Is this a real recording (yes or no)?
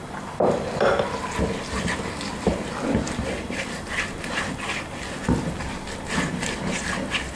yes